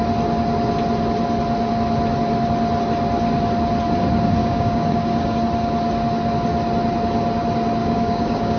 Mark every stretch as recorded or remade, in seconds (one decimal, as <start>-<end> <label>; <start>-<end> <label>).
0.0-4.4 recorded; 4.4-5.4 remade; 5.4-7.8 recorded; 7.8-8.6 remade